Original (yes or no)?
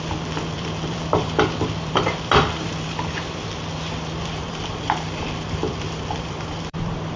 no